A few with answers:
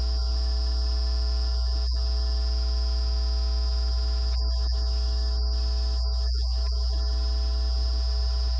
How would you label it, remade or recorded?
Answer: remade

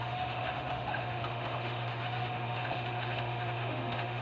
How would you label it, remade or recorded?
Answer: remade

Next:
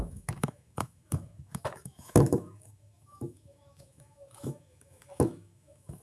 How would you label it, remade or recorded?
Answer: remade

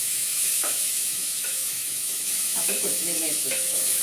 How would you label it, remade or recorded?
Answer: remade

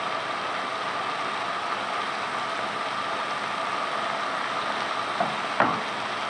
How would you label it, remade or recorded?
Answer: recorded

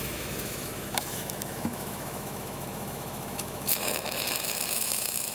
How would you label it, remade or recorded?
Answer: remade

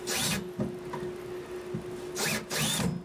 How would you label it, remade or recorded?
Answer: recorded